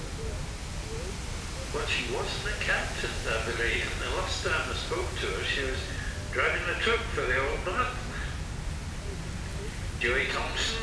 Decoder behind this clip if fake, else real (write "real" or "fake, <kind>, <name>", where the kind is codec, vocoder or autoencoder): real